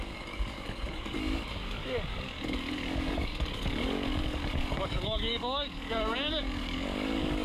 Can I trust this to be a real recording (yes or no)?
no